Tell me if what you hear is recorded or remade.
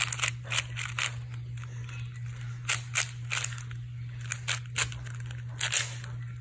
recorded